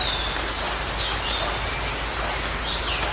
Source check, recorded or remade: recorded